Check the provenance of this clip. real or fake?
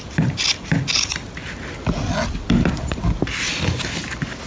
real